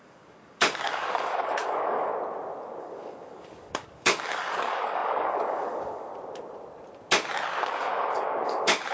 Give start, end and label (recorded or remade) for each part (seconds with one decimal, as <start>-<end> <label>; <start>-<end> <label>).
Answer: 0.0-2.1 remade; 2.1-2.8 recorded; 2.8-6.1 remade; 6.1-7.6 recorded; 7.6-8.9 remade